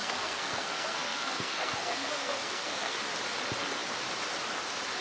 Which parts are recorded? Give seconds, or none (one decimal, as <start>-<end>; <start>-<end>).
3.0-5.0